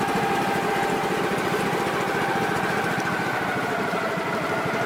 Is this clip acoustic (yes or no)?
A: yes